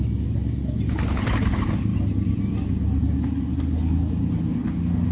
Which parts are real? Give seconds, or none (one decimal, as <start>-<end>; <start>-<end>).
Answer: 0.0-5.1